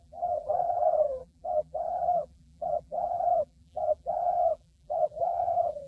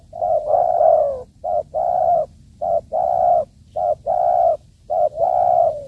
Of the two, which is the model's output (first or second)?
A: first